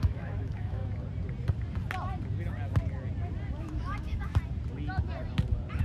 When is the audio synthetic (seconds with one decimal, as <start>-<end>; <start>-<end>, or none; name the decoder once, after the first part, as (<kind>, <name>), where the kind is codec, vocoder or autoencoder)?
0.0-0.8 (autoencoder, DAC-VAE); 3.6-4.3